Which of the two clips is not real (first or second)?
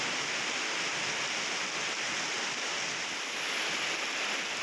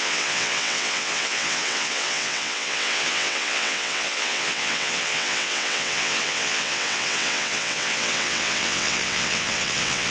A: second